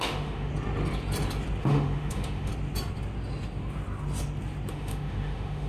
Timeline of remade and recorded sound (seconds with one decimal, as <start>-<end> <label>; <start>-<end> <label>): 0.0-0.5 remade; 0.5-1.6 recorded; 1.6-2.5 remade; 2.5-4.7 recorded; 4.7-5.7 remade